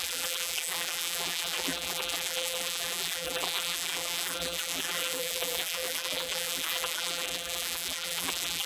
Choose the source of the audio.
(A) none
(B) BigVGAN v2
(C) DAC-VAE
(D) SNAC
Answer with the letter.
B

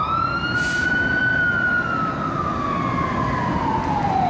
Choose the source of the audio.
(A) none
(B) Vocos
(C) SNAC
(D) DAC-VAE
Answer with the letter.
A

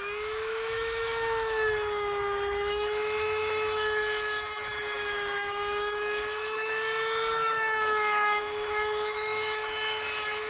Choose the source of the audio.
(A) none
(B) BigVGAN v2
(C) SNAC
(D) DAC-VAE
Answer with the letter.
D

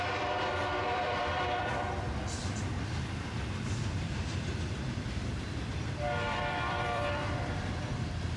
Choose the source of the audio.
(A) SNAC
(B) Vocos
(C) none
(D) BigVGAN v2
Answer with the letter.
D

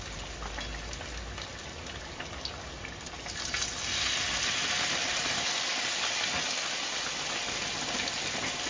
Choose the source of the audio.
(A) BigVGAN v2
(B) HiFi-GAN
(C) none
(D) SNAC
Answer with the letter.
C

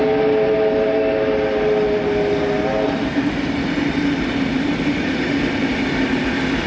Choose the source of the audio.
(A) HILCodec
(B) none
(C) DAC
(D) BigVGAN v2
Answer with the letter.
B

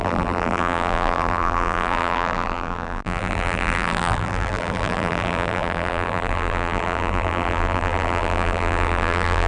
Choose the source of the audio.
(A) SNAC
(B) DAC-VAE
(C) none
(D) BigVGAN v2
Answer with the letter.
D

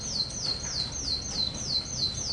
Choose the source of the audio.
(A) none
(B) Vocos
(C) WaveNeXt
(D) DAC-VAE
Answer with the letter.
A